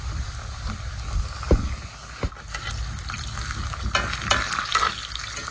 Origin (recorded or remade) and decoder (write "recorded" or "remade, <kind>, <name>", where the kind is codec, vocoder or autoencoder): recorded